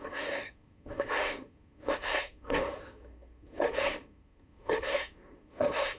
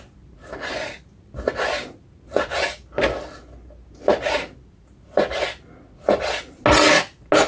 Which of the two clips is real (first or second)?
second